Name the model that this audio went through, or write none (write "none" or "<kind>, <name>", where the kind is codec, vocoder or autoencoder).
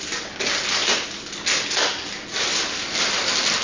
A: none